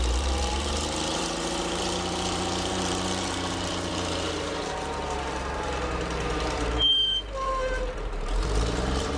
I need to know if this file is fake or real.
fake